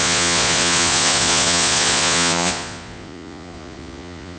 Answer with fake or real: fake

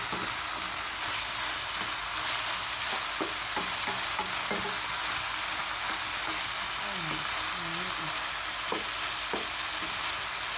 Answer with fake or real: real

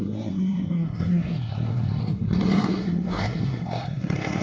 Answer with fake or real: fake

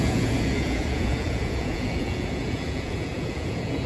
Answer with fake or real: fake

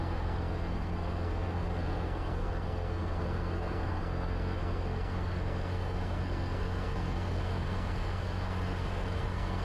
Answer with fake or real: fake